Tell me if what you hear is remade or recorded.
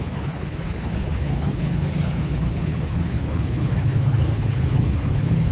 remade